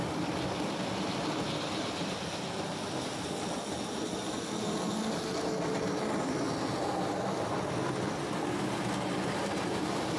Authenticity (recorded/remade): recorded